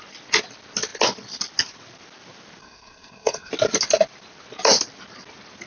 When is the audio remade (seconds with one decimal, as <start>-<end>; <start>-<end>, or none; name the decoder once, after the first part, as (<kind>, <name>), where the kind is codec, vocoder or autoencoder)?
2.6-3.5 (codec, SNAC)